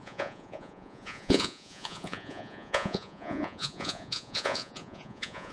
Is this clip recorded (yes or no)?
no